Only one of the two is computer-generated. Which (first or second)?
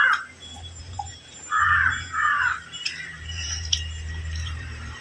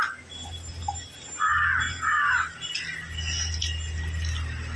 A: first